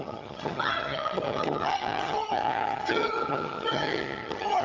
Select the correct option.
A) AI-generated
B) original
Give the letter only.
A